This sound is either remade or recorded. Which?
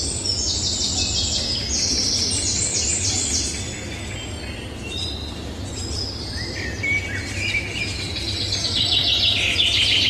recorded